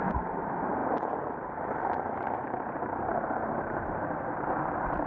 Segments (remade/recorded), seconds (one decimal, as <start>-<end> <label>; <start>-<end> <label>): 0.0-5.1 remade